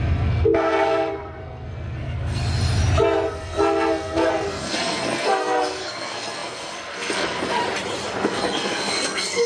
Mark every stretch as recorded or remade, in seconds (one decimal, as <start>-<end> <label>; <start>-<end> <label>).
0.0-2.4 remade; 2.4-3.3 recorded; 3.3-7.6 remade; 7.6-8.2 recorded; 8.2-9.5 remade